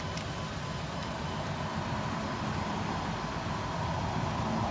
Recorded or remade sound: recorded